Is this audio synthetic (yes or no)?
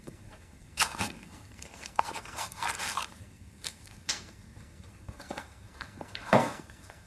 yes